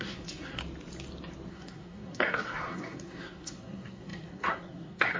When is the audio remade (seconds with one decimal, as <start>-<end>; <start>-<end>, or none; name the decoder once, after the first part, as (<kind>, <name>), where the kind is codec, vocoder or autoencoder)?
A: 0.0-0.6 (codec, SNAC); 1.5-5.2

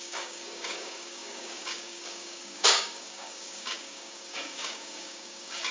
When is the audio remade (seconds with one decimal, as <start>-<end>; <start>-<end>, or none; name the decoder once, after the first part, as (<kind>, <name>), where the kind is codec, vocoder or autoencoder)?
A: 0.0-5.7 (codec, DAC)

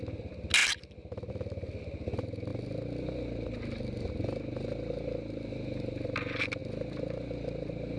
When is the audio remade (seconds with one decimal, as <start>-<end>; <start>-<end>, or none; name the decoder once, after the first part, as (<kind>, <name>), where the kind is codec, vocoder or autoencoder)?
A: none

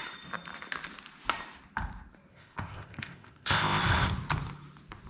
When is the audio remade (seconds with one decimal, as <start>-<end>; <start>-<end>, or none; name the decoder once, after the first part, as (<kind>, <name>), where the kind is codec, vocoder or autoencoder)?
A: 2.3-3.8 (codec, ZipCodec)

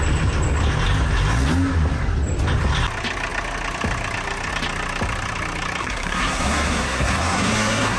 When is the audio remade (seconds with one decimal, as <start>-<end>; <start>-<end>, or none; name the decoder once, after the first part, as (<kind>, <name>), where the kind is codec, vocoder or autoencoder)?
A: 5.8-8.0 (codec, SNAC)